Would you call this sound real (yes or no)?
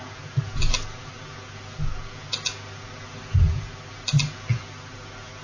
yes